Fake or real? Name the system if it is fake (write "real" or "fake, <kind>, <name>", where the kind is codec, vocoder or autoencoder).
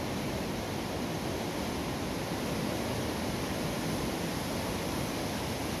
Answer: real